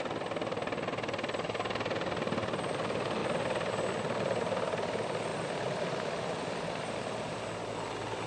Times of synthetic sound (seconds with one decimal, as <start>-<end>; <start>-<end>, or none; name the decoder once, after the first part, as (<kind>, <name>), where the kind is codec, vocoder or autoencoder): none